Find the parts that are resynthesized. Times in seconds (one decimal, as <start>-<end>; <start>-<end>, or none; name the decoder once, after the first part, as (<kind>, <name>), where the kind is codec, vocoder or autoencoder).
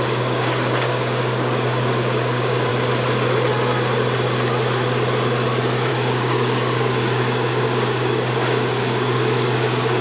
0.0-2.7 (codec, DAC); 5.9-10.0